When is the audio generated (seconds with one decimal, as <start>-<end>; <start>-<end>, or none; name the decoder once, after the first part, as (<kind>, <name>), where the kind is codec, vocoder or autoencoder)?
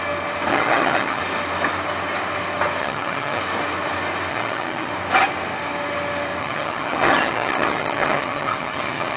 0.5-1.2 (vocoder, HiFi-GAN); 2.8-3.4; 4.3-4.9; 6.4-9.2